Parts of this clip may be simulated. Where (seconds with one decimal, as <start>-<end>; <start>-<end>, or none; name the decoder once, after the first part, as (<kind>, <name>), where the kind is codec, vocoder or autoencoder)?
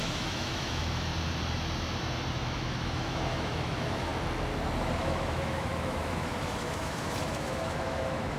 0.0-1.1 (autoencoder, DAC-VAE); 2.3-4.1; 5.0-8.4